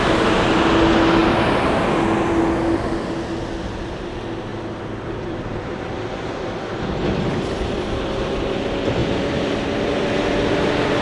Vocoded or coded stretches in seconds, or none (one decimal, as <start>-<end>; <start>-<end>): 1.2-2.3; 4.5-5.8; 9.0-10.5